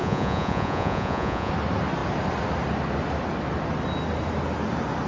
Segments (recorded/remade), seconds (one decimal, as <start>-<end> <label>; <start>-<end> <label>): 0.0-1.5 remade; 1.5-5.1 recorded